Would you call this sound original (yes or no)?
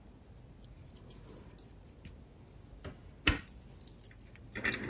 yes